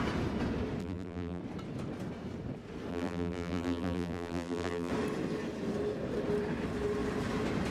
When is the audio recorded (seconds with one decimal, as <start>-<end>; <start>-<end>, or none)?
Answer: 0.0-0.8; 1.4-2.9; 4.9-7.7